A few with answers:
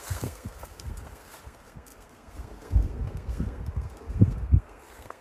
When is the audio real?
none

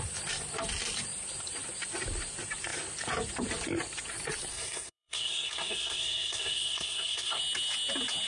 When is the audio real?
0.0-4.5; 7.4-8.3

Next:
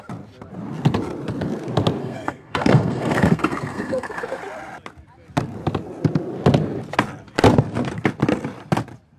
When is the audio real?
0.0-2.0; 4.4-9.2

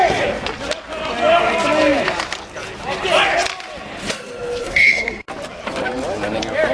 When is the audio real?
0.0-4.6; 5.3-6.7

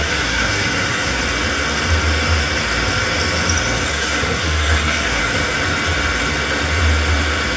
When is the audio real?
1.2-3.9; 5.2-7.6

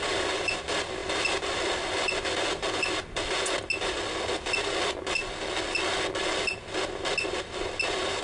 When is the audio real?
0.0-8.2